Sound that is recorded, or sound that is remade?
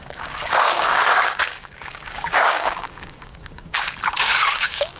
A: remade